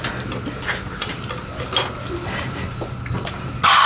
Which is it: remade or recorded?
recorded